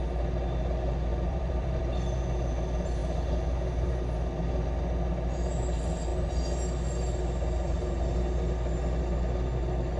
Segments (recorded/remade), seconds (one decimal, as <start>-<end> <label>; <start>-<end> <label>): 0.0-1.1 recorded; 1.1-1.8 remade; 1.8-10.0 recorded